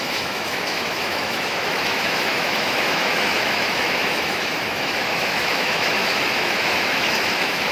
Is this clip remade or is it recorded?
remade